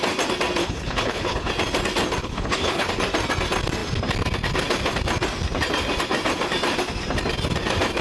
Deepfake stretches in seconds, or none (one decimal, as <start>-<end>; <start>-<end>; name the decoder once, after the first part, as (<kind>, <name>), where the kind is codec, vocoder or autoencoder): 0.6-1.5 (codec, HILCodec); 2.2-2.9